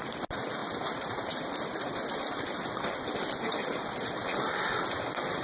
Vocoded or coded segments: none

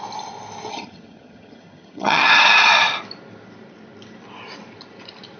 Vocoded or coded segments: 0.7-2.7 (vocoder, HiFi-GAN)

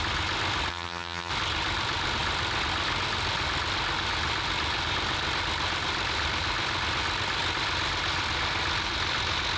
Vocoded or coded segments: 0.7-1.3 (vocoder, HiFi-GAN)

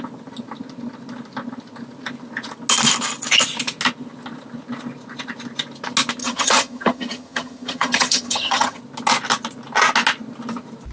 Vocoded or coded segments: 6.2-8.8 (vocoder, HiFi-GAN)

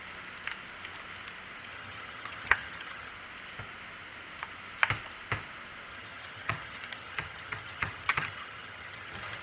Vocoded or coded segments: 1.7-3.1 (vocoder, HiFi-GAN); 5.9-9.4

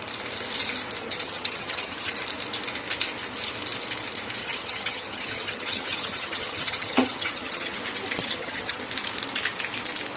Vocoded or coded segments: 1.0-2.1 (vocoder, HiFi-GAN); 4.4-7.8; 8.2-8.8

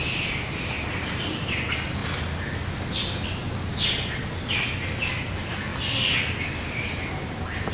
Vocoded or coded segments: none